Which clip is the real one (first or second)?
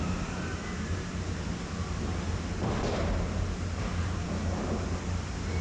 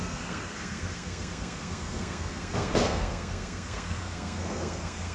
first